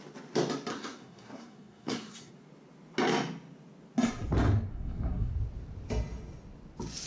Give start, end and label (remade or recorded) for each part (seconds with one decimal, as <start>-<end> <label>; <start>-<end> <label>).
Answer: 0.0-0.7 recorded; 0.7-2.3 remade; 2.3-4.7 recorded; 4.7-5.3 remade; 5.3-7.1 recorded

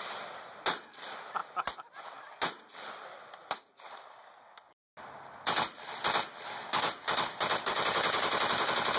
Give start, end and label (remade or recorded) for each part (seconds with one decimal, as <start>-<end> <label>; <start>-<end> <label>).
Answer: 0.0-1.4 recorded; 1.4-2.0 remade; 2.0-9.0 recorded

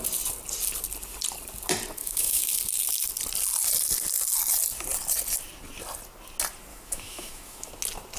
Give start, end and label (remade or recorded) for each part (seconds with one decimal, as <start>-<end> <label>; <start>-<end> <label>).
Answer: 0.0-2.0 recorded; 2.0-2.5 remade; 2.5-6.7 recorded; 6.7-7.7 remade; 7.7-8.2 recorded

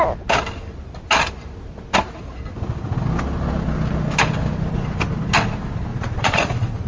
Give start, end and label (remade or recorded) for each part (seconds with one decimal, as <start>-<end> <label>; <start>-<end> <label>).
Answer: 0.0-5.9 recorded; 5.9-6.9 remade

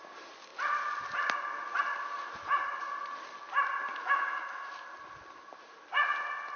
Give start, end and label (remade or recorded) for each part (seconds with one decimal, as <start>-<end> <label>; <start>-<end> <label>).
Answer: 0.0-3.9 recorded; 3.9-4.7 remade; 4.7-6.6 recorded

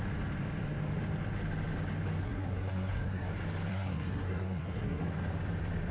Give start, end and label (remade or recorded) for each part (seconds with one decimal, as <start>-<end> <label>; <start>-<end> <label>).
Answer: 0.0-2.2 recorded; 2.2-3.3 remade; 3.3-3.7 recorded; 3.7-5.0 remade; 5.0-5.9 recorded

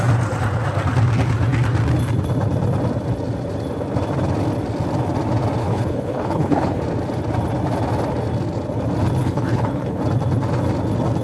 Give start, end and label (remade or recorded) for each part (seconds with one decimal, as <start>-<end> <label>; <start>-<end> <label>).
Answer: 0.0-5.6 recorded; 5.6-6.8 remade; 6.8-9.2 recorded; 9.2-10.0 remade; 10.0-11.2 recorded

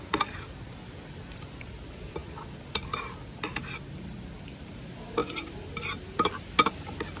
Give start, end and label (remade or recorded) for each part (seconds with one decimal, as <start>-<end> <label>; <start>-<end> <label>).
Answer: 0.0-7.2 recorded